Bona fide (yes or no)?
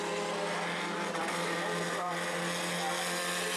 yes